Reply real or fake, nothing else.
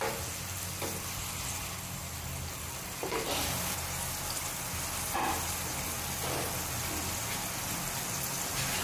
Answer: real